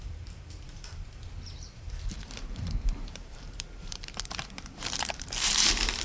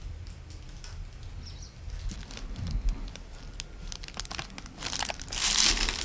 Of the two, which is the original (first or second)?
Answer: second